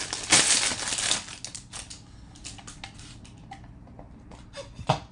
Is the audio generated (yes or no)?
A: no